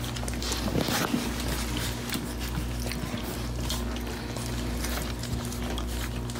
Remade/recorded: recorded